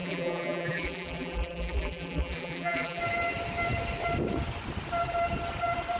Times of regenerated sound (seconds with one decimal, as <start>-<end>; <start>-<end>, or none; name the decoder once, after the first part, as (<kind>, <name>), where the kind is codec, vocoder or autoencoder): 0.0-3.0 (vocoder, BigVGAN v2)